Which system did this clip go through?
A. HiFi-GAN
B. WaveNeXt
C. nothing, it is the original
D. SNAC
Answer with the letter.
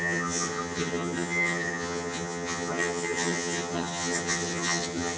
A